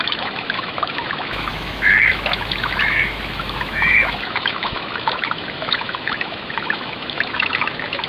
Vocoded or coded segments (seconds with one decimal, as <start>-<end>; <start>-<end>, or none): 0.0-8.1